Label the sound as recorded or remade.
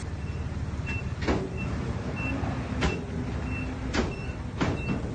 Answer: recorded